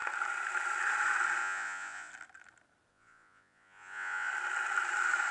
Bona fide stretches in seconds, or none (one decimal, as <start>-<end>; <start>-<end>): 0.0-1.4; 2.1-2.9; 4.3-5.3